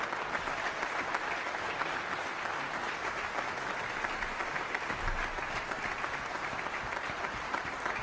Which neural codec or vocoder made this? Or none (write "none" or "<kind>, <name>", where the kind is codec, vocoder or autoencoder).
none